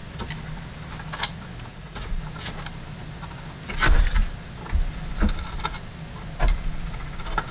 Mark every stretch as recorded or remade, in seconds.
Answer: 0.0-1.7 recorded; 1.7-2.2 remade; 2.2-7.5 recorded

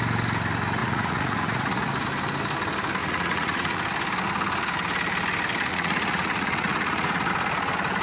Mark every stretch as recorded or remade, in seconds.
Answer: 0.0-0.8 recorded; 0.8-1.9 remade; 1.9-3.0 recorded; 3.0-3.8 remade; 3.8-5.7 recorded; 5.7-7.3 remade; 7.3-8.0 recorded

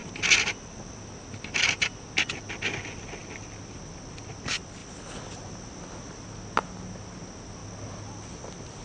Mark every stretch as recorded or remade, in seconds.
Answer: 0.0-8.8 recorded

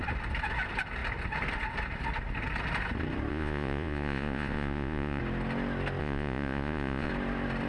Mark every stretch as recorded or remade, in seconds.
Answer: 0.0-3.3 recorded; 3.3-5.2 remade; 5.2-6.0 recorded; 6.0-7.1 remade; 7.1-7.7 recorded